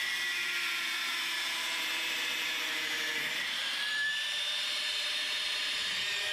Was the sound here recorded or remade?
remade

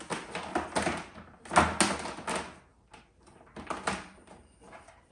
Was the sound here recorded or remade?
recorded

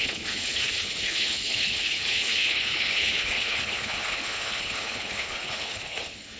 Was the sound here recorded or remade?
remade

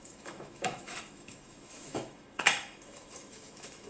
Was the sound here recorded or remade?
remade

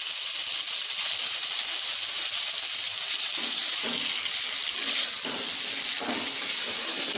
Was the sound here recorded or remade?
recorded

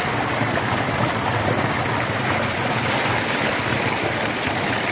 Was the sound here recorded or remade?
recorded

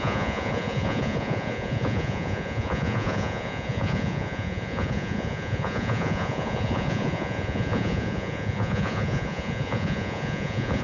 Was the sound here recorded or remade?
remade